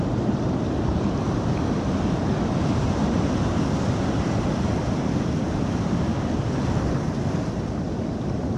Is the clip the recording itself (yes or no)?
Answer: yes